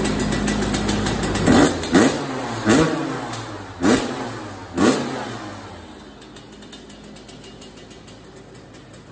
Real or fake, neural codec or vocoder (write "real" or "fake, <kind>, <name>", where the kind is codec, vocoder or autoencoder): real